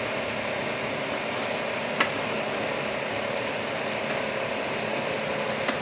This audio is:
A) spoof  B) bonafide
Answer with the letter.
B